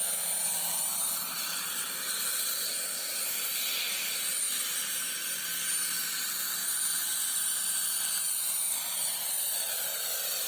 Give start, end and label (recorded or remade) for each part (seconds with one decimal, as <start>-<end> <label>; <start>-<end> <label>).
0.0-6.6 recorded; 6.6-7.1 remade; 7.1-10.5 recorded